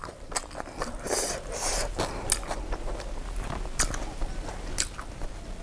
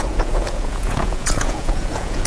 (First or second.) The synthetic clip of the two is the second